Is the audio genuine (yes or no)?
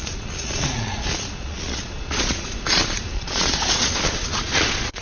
no